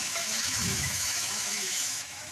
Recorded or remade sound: remade